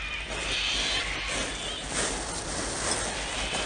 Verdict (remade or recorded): recorded